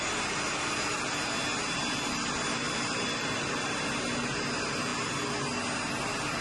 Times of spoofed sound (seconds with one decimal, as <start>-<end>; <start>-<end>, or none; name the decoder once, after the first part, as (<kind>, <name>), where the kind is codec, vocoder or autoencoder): none